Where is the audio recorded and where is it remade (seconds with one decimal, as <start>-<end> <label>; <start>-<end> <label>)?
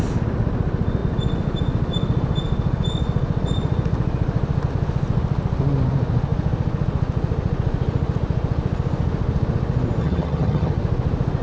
0.0-10.0 recorded; 10.0-10.7 remade; 10.7-11.4 recorded